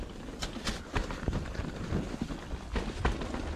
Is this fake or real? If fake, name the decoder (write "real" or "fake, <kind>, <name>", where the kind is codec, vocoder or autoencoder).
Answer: real